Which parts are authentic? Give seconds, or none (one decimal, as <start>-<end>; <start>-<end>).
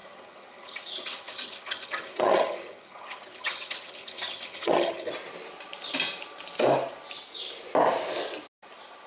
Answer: 5.1-9.1